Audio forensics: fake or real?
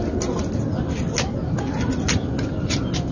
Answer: real